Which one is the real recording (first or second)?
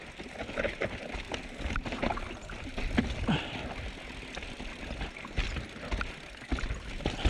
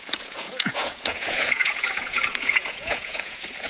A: first